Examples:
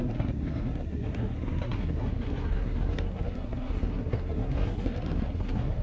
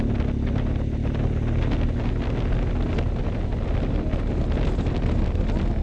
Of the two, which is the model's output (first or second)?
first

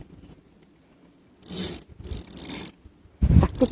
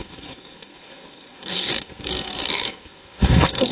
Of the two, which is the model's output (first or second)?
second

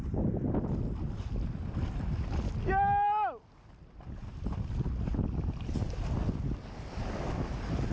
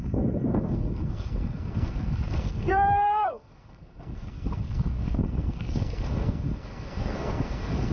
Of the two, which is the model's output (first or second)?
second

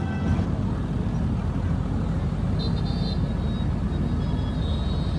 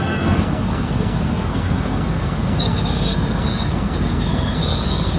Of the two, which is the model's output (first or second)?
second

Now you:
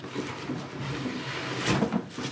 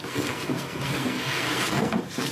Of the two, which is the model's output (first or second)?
second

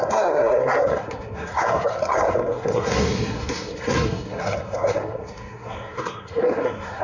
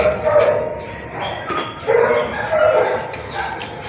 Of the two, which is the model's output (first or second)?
first